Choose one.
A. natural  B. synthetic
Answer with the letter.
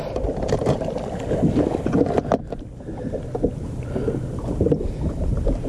A